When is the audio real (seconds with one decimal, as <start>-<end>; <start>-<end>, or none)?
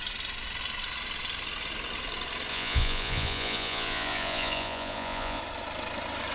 0.0-2.5; 5.4-6.3